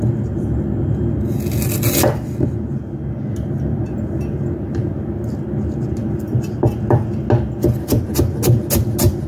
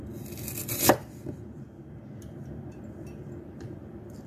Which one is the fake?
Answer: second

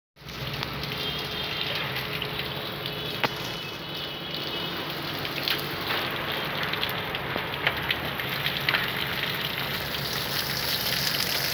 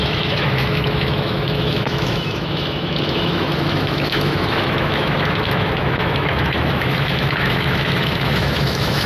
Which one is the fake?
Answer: second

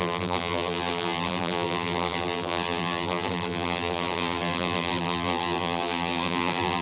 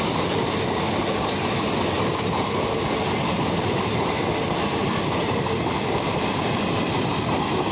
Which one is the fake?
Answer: first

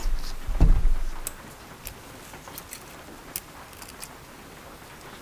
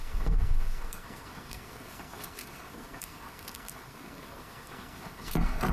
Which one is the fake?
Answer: second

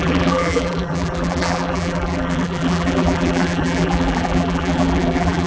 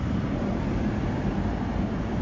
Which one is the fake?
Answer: first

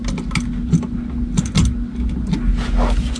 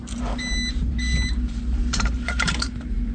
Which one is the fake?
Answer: second